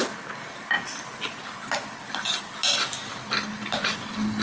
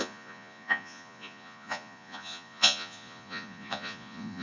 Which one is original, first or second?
first